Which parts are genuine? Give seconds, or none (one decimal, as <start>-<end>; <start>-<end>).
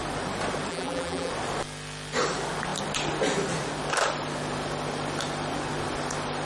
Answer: 0.0-0.7; 1.3-6.4